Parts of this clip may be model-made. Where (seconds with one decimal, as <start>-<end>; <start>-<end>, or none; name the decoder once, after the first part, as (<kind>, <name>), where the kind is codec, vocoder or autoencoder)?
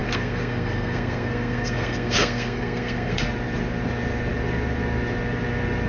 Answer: 0.0-3.3 (codec, SNAC)